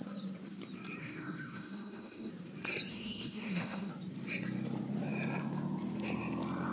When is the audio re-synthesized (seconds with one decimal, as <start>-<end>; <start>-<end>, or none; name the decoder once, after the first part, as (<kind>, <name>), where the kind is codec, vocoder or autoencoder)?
1.0-2.3 (codec, SNAC); 2.9-3.9